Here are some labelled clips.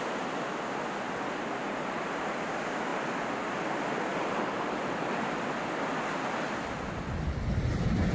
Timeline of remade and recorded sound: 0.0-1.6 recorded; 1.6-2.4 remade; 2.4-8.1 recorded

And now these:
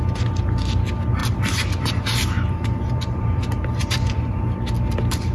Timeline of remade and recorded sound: 0.0-1.2 recorded; 1.2-4.4 remade; 4.4-5.3 recorded